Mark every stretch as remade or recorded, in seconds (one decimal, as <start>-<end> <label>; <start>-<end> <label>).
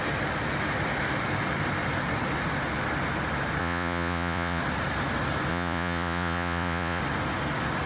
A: 0.0-3.6 recorded; 3.6-4.6 remade; 4.6-5.5 recorded; 5.5-7.0 remade; 7.0-7.9 recorded